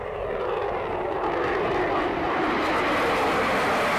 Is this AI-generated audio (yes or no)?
no